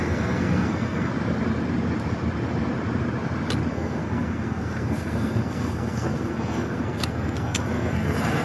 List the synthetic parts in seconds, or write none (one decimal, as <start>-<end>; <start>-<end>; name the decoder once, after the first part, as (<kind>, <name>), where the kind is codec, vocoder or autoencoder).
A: 0.0-1.1 (codec, SNAC); 3.7-8.4